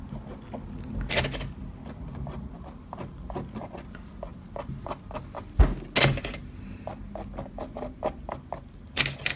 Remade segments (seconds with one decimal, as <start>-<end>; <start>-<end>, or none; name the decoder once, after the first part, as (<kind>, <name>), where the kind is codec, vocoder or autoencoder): 6.4-6.9 (vocoder, BigVGAN v2)